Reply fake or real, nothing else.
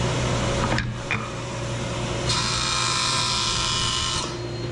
fake